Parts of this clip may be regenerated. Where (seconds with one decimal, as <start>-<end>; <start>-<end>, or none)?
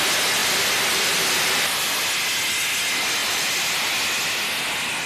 0.4-1.9; 3.2-3.9